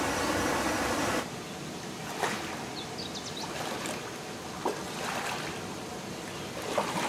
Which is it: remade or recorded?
recorded